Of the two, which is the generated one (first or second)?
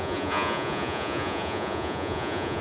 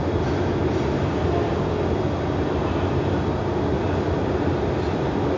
first